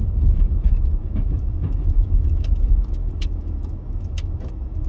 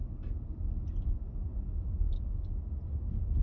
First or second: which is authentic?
second